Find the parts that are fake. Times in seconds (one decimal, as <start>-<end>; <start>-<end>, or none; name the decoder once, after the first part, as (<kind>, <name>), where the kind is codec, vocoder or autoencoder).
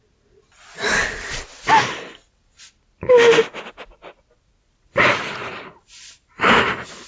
none